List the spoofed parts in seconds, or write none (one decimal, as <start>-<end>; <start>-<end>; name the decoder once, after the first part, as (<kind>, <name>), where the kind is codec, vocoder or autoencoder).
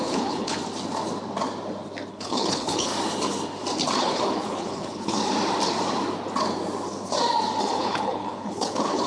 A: 0.0-0.6 (codec, HILCodec); 2.1-2.9; 4.0-5.2; 7.6-9.1